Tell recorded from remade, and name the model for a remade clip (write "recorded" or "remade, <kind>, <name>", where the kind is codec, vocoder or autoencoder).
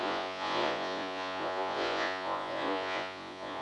remade, vocoder, Vocos